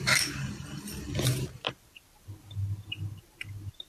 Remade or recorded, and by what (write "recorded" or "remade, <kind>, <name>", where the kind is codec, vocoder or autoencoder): remade, vocoder, BigVGAN v2